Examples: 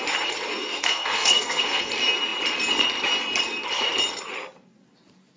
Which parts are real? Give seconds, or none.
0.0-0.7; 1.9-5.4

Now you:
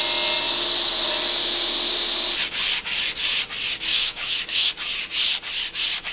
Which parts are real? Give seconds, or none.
0.0-3.9; 4.7-6.1

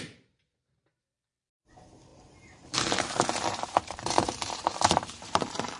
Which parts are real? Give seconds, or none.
0.0-2.1

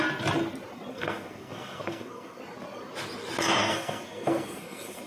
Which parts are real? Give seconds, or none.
0.0-0.9; 2.4-3.6

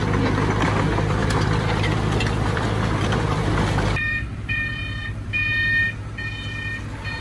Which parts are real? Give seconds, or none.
0.0-1.2; 5.5-7.2